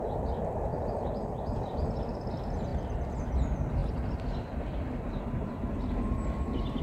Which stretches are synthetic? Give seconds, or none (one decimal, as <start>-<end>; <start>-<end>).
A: 0.7-2.3